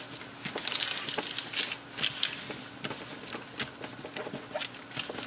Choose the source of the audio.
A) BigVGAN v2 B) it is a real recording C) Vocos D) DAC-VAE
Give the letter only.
B